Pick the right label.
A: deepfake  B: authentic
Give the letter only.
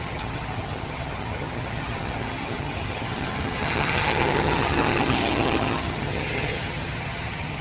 A